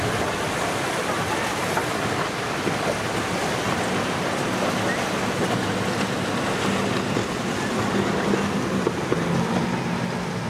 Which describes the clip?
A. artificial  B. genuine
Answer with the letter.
B